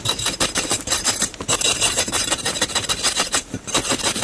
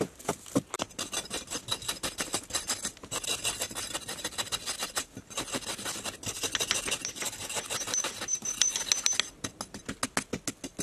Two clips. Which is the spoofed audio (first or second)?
first